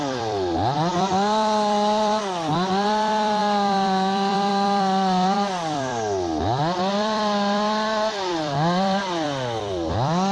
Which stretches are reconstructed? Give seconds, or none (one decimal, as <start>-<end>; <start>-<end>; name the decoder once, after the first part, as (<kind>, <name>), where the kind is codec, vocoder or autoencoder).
0.0-10.3 (vocoder, BigVGAN v2)